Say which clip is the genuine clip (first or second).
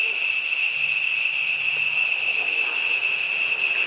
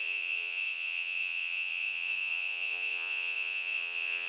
first